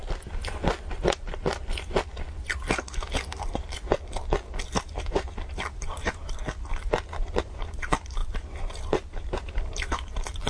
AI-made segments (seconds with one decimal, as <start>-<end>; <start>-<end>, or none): 4.9-6.4; 7.4-10.5